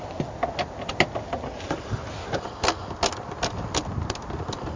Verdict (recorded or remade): recorded